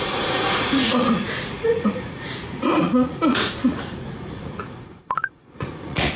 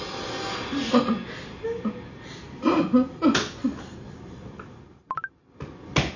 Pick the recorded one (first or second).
second